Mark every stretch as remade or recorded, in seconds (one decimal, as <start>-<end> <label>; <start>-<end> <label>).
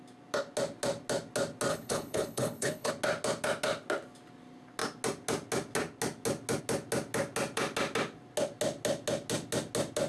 0.0-1.7 recorded; 1.7-2.9 remade; 2.9-10.1 recorded